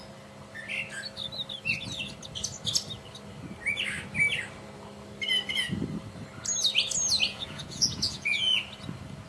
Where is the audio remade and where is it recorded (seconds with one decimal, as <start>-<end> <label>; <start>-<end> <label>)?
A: 0.0-7.3 recorded; 7.3-8.6 remade; 8.6-9.3 recorded